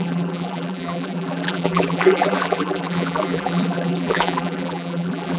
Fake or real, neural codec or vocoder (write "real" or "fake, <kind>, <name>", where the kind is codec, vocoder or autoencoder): fake, vocoder, BigVGAN v2